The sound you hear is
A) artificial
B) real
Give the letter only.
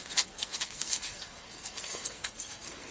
A